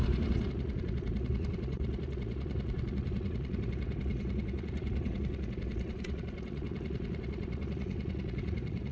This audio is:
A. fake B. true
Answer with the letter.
A